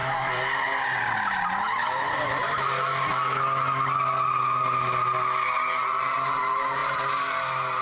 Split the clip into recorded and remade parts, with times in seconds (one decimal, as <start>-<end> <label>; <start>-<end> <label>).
0.0-7.8 recorded